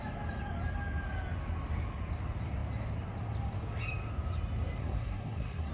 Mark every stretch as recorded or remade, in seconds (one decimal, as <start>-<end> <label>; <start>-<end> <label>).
0.0-4.8 recorded; 4.8-5.7 remade